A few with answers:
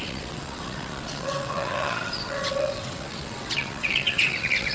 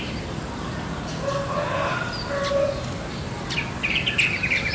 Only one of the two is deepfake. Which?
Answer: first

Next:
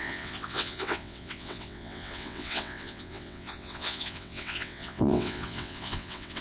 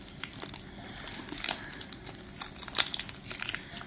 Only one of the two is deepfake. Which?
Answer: first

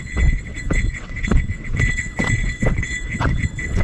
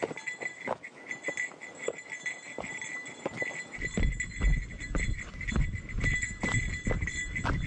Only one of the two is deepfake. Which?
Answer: first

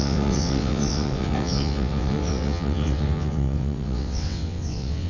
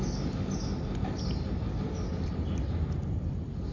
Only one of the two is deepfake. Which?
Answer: first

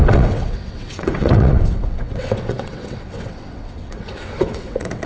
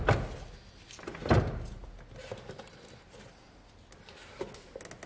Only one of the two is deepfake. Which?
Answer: first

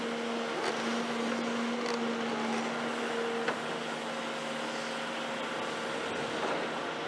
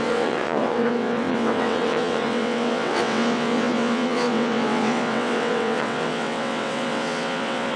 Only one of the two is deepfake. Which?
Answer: second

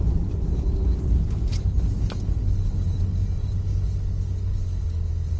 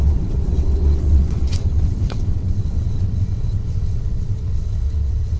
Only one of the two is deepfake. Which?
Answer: second